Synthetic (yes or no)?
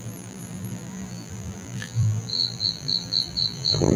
yes